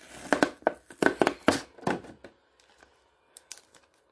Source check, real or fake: real